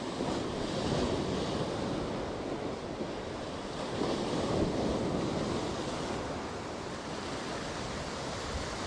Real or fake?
real